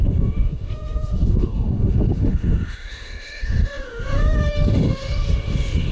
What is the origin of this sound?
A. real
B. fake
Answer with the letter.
B